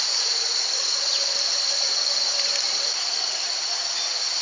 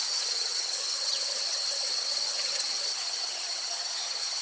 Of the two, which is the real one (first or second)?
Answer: first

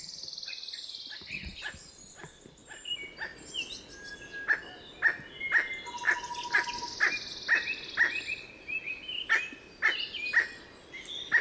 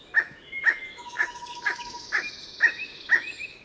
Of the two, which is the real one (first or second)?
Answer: first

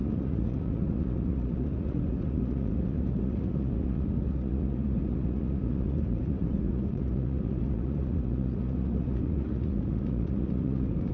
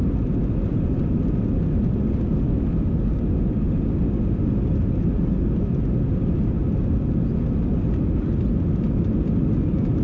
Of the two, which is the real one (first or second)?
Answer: second